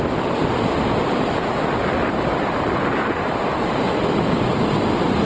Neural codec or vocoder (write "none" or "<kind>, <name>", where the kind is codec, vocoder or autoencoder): none